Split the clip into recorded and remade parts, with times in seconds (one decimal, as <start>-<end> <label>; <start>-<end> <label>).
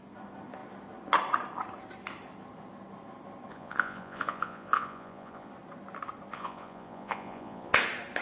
0.0-3.5 recorded; 3.5-5.5 remade; 5.5-6.3 recorded; 6.3-7.7 remade; 7.7-8.2 recorded